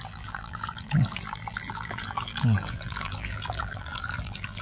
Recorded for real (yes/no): no